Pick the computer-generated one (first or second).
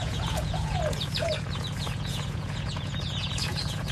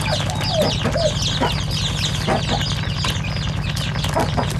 first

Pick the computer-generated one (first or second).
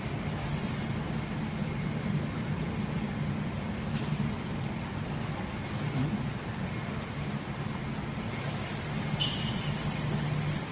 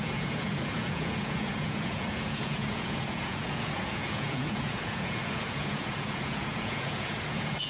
second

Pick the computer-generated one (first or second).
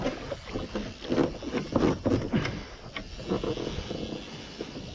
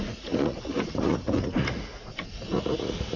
second